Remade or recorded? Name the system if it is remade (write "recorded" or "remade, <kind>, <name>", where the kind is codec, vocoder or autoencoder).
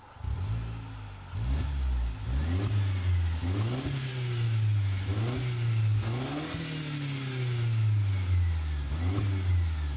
recorded